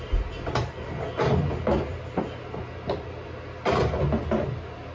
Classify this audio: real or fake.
real